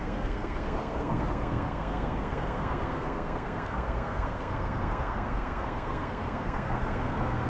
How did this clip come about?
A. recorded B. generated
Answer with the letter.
B